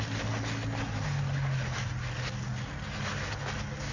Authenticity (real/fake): real